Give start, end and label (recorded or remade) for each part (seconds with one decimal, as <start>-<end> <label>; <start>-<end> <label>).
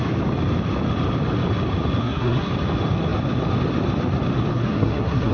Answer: 0.0-2.0 recorded; 2.0-2.5 remade; 2.5-4.5 recorded; 4.5-5.3 remade